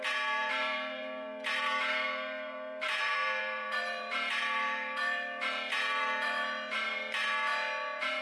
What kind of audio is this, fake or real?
fake